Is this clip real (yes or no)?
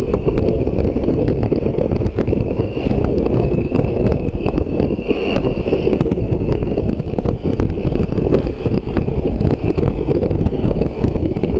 no